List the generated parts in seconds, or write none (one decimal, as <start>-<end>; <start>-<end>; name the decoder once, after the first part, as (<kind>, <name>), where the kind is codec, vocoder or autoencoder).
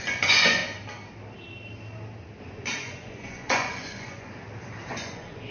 0.0-0.6 (vocoder, Vocos); 2.4-4.3; 4.9-5.5